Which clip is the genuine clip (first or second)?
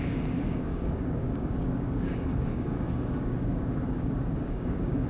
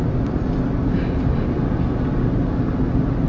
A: second